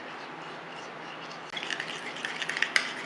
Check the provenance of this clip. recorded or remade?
recorded